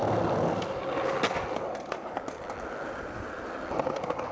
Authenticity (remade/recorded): recorded